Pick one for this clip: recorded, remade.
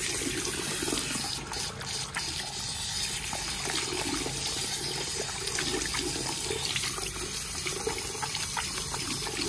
recorded